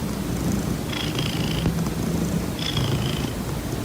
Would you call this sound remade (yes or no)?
no